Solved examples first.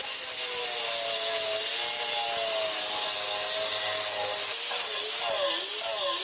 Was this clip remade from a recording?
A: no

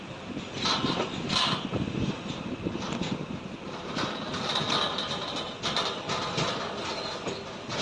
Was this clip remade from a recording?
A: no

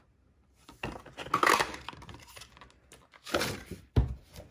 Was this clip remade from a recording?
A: no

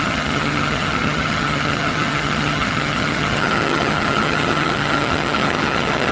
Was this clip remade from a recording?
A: yes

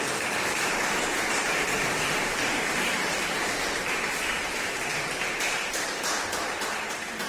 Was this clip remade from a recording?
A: yes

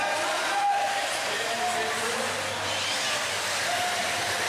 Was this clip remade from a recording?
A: no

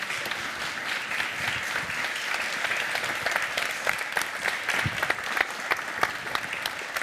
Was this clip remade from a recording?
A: no